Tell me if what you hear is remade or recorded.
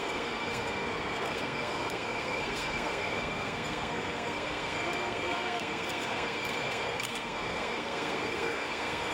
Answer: remade